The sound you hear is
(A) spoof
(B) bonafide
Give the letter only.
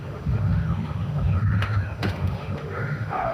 A